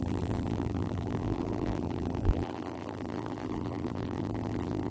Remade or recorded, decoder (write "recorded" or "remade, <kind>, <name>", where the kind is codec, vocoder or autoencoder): remade, vocoder, BigVGAN v2